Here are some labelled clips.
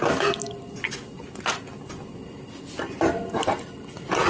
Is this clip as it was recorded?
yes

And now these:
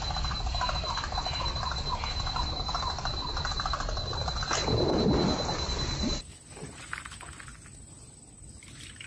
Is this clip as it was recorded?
yes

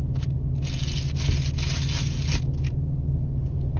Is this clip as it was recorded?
yes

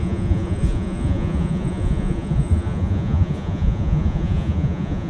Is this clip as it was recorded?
no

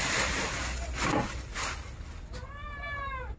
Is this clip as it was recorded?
yes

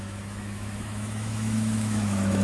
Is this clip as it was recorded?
no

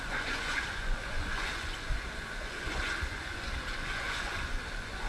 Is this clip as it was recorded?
no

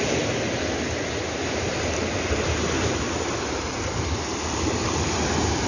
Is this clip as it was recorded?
yes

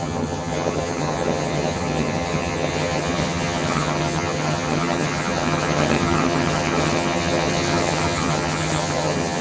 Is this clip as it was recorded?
no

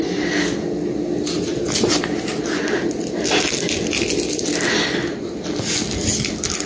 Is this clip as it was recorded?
yes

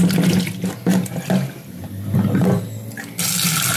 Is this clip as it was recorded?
yes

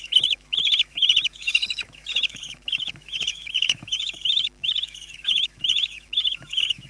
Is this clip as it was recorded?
no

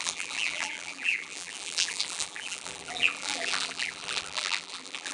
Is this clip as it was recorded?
no